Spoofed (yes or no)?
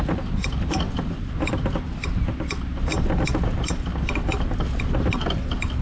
no